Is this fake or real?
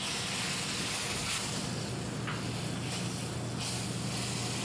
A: real